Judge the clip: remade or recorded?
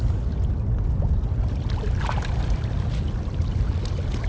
recorded